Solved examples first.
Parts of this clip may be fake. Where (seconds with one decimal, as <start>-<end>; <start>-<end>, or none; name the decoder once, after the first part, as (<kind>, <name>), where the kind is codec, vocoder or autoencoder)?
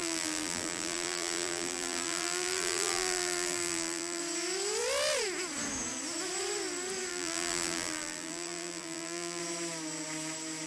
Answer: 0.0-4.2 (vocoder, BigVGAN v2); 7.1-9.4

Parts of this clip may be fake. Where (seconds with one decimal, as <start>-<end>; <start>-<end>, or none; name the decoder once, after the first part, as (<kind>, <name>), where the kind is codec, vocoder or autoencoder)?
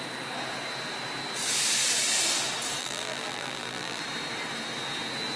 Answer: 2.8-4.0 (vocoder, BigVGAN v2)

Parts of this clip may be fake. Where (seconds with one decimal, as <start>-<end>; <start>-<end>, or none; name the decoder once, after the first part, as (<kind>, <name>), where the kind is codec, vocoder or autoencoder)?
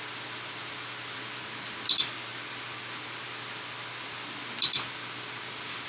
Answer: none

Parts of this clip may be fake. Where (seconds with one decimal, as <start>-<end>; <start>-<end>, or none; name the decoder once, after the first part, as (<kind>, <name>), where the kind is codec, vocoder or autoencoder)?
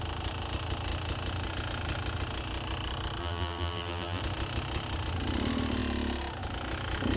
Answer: 3.2-4.2 (vocoder, BigVGAN v2)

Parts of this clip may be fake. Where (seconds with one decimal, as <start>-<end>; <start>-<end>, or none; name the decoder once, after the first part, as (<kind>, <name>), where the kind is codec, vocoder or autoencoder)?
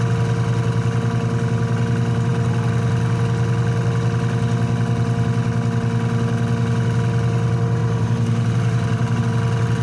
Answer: 7.8-9.2 (vocoder, BigVGAN v2)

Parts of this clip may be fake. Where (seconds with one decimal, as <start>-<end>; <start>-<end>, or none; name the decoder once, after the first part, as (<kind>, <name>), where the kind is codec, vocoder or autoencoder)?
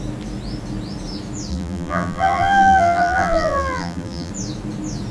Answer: 1.5-4.3 (vocoder, BigVGAN v2)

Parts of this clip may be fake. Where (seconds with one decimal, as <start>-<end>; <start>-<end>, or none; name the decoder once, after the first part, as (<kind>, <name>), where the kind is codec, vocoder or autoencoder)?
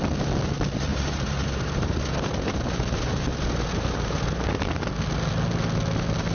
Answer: 0.9-4.7 (vocoder, BigVGAN v2)